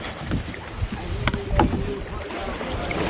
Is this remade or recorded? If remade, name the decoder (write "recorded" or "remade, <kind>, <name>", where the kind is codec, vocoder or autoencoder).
recorded